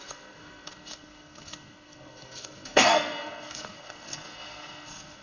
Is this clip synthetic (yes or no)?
yes